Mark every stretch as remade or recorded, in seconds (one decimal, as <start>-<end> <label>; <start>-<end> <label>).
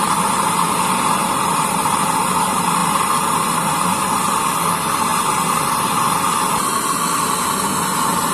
0.0-1.2 recorded; 1.2-2.0 remade; 2.0-8.3 recorded